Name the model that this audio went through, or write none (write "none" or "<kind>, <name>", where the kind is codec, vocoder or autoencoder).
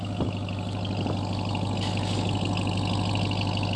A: none